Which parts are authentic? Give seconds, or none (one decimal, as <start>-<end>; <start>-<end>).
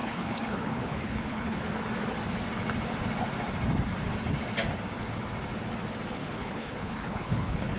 1.6-6.2